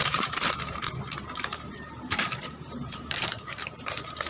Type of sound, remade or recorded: remade